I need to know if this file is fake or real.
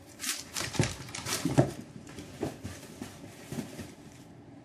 fake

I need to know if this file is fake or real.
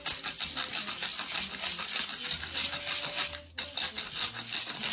real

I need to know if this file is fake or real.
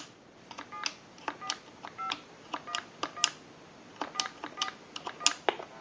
real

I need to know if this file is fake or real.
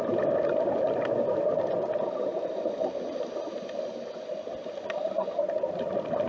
real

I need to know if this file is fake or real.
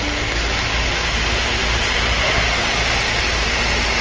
real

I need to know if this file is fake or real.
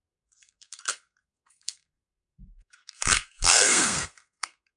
fake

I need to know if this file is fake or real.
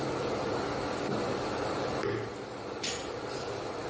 real